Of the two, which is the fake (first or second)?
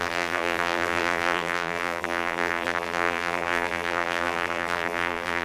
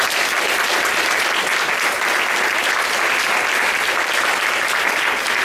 first